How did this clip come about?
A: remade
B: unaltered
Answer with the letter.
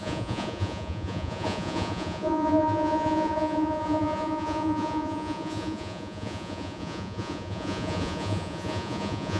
A